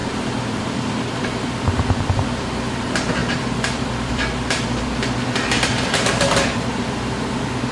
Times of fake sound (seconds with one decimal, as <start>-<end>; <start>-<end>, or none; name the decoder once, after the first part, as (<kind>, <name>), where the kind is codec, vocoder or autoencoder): 0.0-7.7 (vocoder, BigVGAN v2)